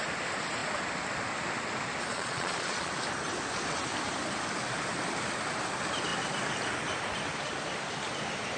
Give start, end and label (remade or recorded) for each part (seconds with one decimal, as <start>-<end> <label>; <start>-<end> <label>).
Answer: 0.0-2.1 recorded; 2.1-2.9 remade; 2.9-8.6 recorded